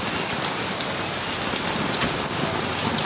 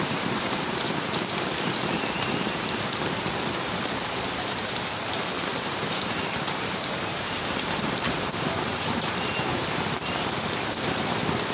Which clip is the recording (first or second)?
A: first